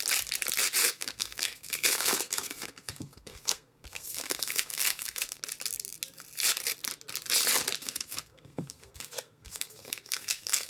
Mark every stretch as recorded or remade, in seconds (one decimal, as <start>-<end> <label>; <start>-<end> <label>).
0.0-0.8 recorded; 0.8-5.4 remade; 5.4-7.8 recorded; 7.8-10.7 remade